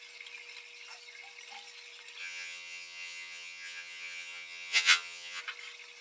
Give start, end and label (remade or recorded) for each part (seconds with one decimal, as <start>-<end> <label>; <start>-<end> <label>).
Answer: 0.0-2.2 recorded; 2.2-5.4 remade; 5.4-6.0 recorded